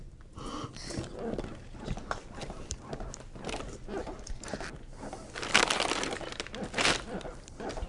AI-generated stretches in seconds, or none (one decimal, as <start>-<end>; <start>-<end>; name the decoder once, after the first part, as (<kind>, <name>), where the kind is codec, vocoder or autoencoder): 2.0-2.8 (vocoder, BigVGAN v2); 4.0-4.5